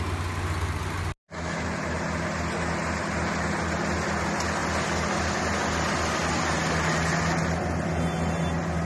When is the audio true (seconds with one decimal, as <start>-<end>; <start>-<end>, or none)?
0.0-8.8